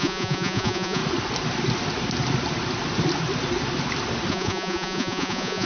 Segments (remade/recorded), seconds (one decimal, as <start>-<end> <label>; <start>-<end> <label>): 0.0-1.0 remade; 1.0-4.3 recorded; 4.3-5.7 remade